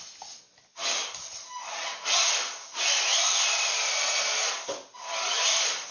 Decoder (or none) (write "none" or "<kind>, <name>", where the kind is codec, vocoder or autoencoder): none